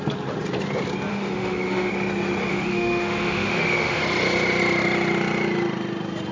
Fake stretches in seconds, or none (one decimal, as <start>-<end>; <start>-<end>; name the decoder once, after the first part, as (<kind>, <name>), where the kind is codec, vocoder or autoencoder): 1.1-1.9 (autoencoder, DAC-VAE); 2.5-4.0